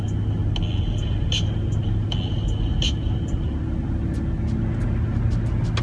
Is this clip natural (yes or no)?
yes